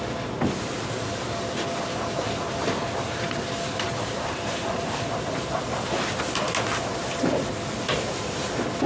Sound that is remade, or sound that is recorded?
recorded